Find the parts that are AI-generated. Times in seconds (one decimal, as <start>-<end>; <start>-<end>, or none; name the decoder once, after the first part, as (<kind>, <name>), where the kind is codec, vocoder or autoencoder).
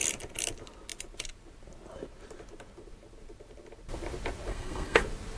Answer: 4.5-5.0 (codec, SNAC)